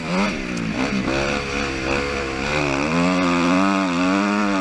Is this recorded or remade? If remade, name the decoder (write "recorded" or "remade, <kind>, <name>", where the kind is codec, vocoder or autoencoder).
recorded